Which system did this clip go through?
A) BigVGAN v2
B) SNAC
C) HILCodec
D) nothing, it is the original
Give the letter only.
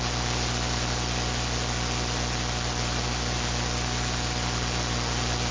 D